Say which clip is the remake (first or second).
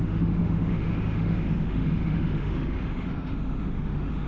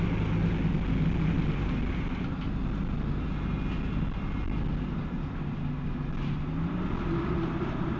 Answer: first